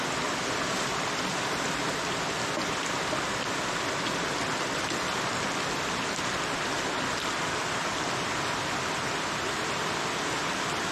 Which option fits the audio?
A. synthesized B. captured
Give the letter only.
B